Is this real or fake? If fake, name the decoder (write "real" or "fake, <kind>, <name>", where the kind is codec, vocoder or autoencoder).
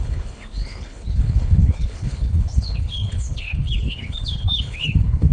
fake, codec, HILCodec